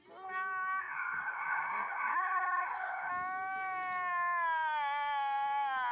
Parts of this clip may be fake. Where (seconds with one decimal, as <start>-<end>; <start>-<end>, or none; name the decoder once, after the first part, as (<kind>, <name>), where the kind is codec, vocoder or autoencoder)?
0.8-3.1 (codec, SNAC)